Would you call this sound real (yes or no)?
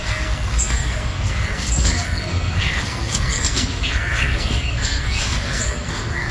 no